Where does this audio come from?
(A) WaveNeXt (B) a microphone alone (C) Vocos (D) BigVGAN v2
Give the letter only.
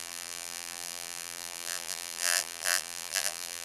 D